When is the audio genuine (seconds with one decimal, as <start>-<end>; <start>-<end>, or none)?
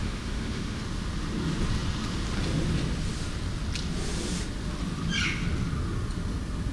0.8-6.7